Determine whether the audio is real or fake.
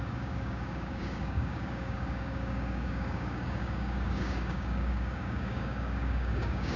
fake